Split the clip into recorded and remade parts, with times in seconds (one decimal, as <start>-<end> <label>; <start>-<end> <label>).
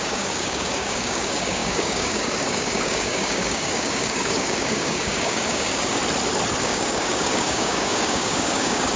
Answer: 0.0-6.0 remade; 6.0-6.6 recorded; 6.6-9.0 remade